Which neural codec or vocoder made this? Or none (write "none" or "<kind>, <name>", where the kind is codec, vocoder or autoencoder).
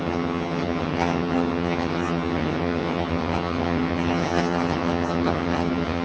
vocoder, HiFi-GAN